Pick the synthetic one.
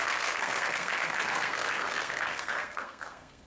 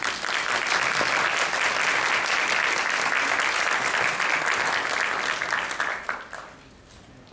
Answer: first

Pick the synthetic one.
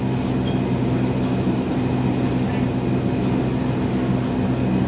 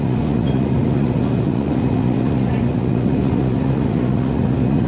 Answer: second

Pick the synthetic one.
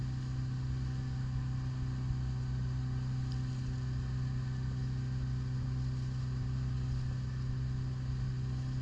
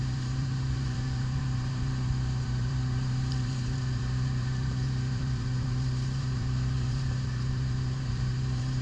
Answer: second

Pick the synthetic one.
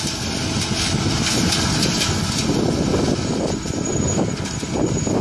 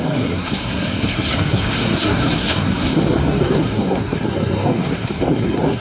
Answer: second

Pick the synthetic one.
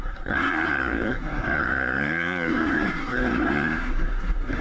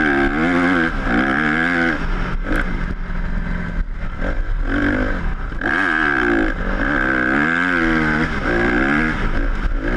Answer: first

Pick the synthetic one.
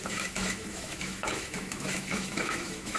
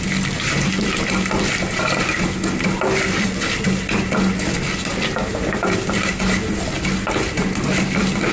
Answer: first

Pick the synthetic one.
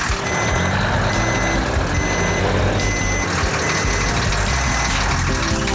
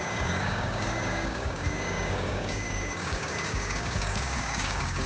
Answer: second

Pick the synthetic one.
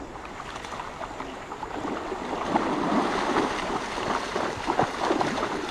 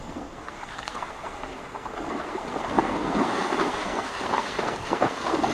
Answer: second